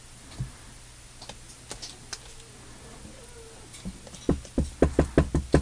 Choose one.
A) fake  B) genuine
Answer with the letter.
B